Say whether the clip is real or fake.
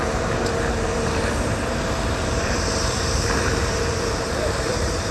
fake